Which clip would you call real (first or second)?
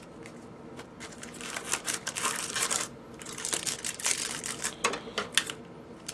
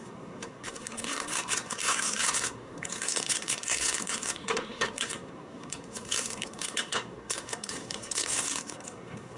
first